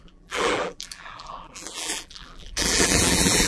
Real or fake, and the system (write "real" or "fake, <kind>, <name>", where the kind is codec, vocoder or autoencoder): fake, vocoder, BigVGAN v2